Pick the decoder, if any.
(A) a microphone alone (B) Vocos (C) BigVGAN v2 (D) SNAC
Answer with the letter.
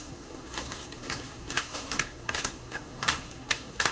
D